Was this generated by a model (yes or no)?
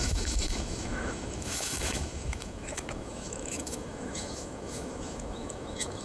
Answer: yes